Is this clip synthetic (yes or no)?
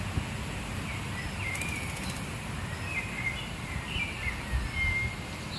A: no